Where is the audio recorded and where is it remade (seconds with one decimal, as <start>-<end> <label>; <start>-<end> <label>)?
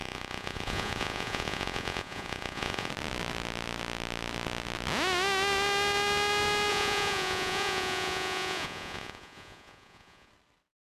0.0-2.9 remade; 2.9-6.7 recorded; 6.7-10.3 remade; 10.3-10.9 recorded